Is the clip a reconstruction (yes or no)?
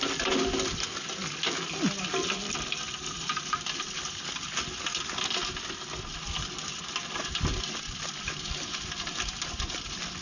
no